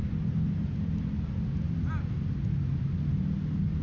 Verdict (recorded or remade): recorded